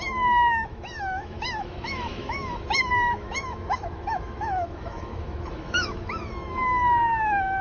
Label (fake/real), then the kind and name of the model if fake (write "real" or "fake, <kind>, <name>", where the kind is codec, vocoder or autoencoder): fake, autoencoder, DAC-VAE